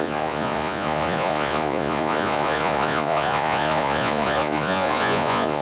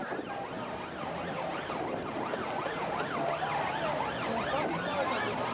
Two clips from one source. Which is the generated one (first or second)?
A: first